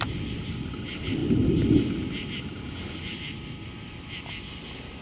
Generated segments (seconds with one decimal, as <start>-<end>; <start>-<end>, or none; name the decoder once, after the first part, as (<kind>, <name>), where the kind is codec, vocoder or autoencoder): none